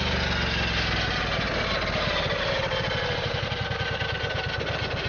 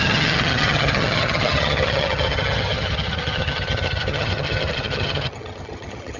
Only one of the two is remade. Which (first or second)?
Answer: second